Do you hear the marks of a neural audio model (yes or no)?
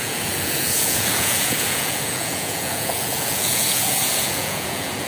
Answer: yes